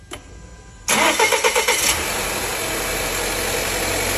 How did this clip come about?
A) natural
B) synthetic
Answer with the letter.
A